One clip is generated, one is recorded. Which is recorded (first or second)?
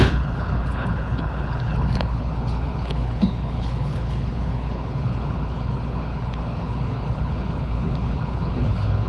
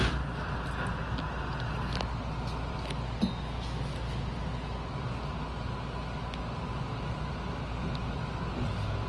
second